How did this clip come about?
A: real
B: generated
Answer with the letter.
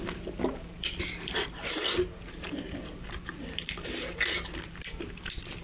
B